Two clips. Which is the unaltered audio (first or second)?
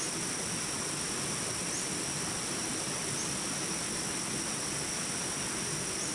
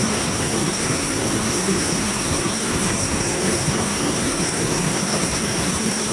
first